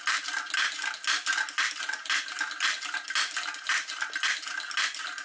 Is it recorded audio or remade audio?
recorded